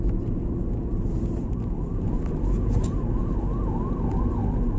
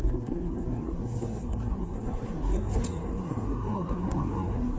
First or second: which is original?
first